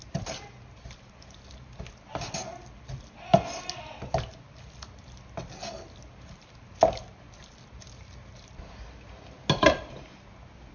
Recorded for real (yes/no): yes